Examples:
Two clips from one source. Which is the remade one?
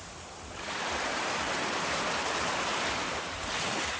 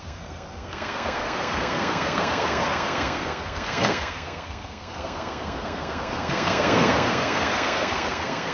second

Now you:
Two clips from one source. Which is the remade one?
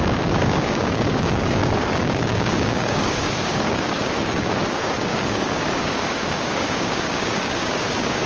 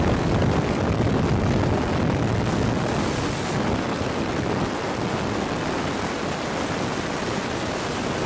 first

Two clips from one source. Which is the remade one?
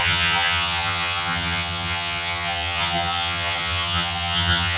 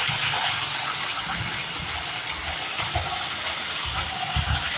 first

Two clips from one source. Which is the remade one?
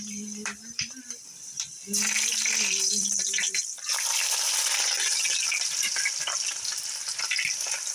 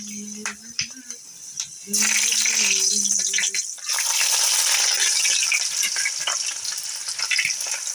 first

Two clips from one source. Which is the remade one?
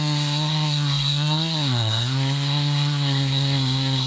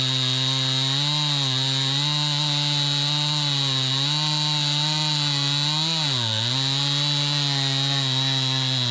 first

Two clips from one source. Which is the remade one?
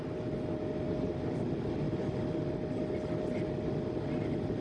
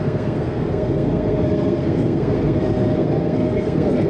second